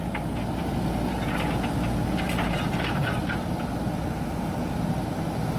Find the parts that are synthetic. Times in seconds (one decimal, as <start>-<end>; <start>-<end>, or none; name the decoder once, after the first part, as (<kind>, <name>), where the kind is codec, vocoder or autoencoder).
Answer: none